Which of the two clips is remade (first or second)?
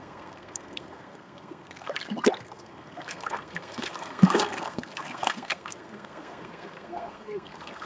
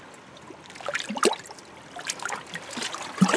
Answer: first